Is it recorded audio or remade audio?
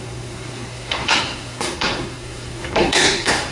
remade